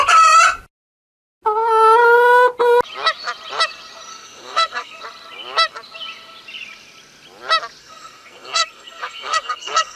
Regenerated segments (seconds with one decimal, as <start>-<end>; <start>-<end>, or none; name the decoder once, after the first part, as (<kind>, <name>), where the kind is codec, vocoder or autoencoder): 4.1-5.0 (codec, SNAC); 7.8-10.0